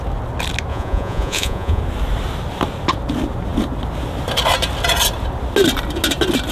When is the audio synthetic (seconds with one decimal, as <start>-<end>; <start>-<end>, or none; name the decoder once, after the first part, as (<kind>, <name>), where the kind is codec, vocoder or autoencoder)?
0.7-1.8 (vocoder, Vocos)